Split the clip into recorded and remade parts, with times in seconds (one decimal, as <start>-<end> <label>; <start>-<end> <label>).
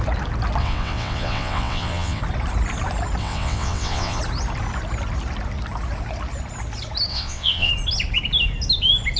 0.0-0.6 recorded; 0.6-2.2 remade; 2.2-3.2 recorded; 3.2-4.2 remade; 4.2-7.1 recorded; 7.1-7.7 remade; 7.7-9.2 recorded